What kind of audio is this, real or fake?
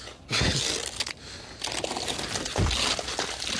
real